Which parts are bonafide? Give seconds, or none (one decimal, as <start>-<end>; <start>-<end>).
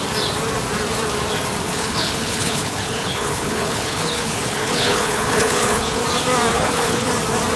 0.0-1.7; 6.0-6.5; 7.1-7.6